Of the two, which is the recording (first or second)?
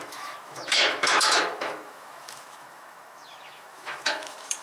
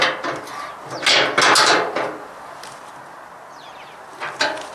second